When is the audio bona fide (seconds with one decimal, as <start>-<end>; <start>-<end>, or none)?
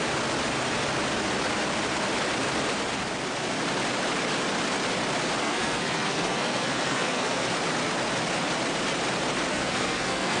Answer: 0.0-5.4; 7.5-9.5